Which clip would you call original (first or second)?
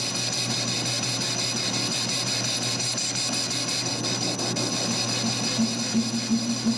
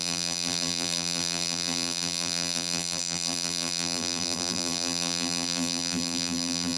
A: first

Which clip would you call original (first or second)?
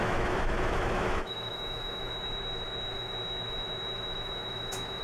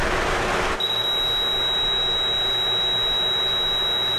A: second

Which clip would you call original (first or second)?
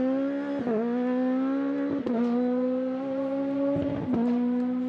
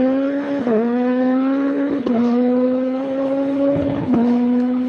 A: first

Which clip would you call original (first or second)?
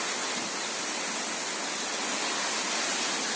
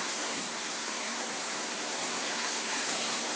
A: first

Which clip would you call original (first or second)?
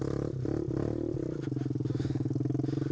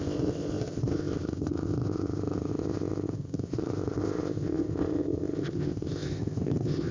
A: first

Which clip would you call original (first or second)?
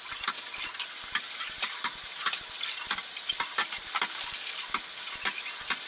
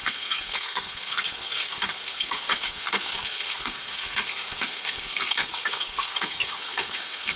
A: first